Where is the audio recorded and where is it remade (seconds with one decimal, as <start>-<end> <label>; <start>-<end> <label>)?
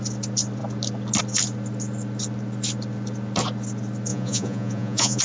0.0-4.1 recorded; 4.1-5.2 remade